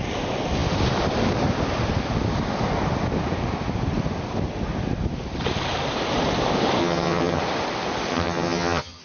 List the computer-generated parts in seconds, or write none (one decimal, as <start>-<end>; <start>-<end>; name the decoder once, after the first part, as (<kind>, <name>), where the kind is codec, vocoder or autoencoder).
6.8-7.4 (vocoder, HiFi-GAN); 8.1-9.0